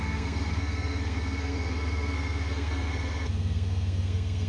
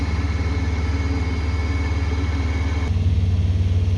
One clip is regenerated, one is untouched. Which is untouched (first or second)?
second